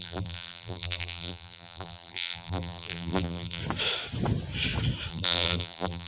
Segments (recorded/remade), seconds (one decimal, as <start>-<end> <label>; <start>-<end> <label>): 0.0-3.6 remade; 3.6-5.1 recorded; 5.1-6.1 remade